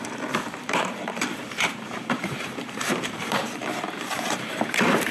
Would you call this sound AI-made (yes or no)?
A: yes